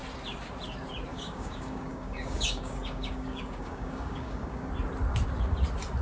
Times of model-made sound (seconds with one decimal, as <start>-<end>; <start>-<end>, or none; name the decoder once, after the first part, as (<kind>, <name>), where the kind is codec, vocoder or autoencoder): 1.1-4.7 (codec, DAC)